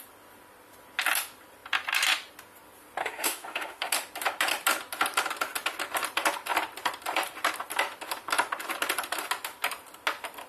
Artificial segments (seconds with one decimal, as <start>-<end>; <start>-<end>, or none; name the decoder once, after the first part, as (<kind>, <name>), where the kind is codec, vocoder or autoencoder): 3.0-3.9 (autoencoder, DAC-VAE)